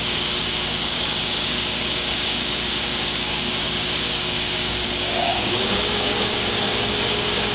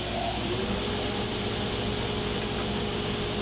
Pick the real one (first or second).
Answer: second